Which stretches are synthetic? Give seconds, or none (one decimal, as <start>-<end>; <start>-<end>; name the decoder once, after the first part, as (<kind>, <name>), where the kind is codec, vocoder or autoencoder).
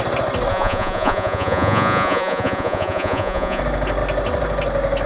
0.5-3.6 (vocoder, Vocos)